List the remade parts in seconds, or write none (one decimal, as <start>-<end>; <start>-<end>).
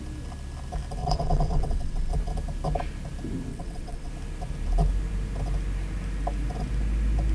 1.0-2.1; 3.5-4.1